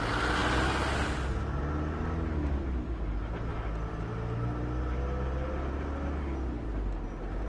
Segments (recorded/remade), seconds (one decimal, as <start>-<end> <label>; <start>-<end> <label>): 0.0-7.5 recorded